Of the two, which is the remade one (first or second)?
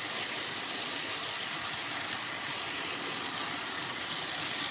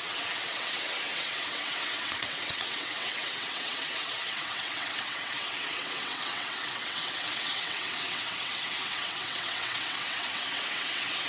second